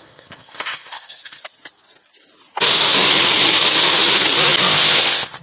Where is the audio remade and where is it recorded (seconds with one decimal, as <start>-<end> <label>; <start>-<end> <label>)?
0.0-1.4 remade; 1.4-4.6 recorded; 4.6-5.4 remade